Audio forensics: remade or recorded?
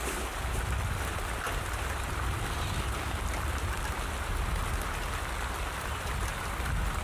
recorded